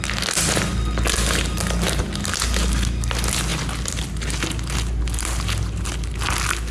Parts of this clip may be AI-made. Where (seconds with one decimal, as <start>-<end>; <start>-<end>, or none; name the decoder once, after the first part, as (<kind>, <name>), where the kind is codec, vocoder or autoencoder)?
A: none